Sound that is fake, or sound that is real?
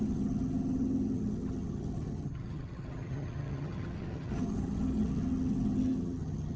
fake